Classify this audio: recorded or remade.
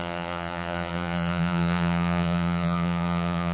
remade